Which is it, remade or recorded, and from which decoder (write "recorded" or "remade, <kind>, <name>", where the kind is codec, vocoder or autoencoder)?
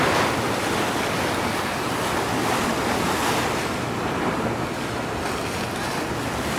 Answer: recorded